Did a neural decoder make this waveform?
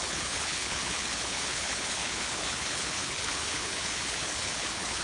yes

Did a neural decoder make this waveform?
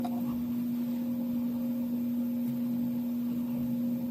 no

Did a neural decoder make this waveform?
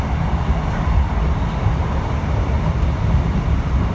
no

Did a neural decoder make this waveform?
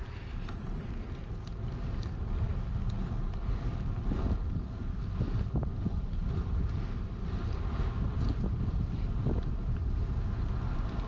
no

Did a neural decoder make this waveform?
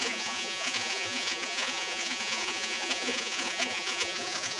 yes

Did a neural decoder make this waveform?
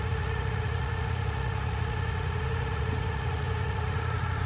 yes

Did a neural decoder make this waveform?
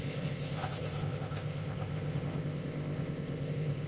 yes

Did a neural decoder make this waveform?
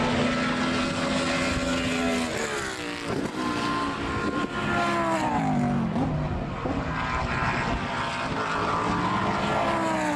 no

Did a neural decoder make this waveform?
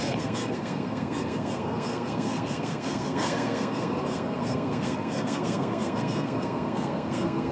yes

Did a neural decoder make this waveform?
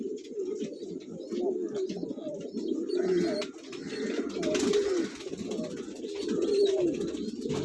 no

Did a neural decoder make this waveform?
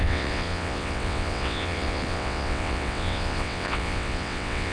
yes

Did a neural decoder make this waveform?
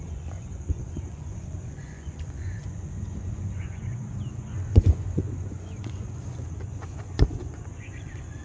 yes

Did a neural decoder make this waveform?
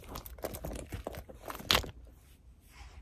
no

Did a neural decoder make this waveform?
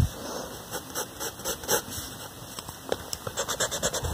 no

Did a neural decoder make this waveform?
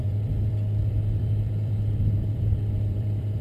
yes